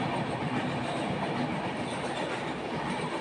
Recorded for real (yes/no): yes